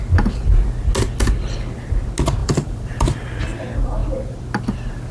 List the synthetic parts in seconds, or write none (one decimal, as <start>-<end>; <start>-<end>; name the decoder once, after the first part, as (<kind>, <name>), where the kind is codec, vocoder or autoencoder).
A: 2.4-3.6 (vocoder, BigVGAN v2)